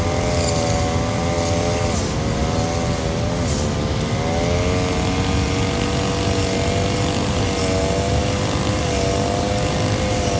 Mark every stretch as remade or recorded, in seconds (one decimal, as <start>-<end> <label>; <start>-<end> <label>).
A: 0.0-10.4 recorded